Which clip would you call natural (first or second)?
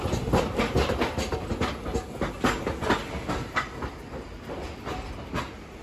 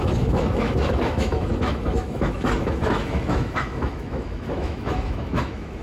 first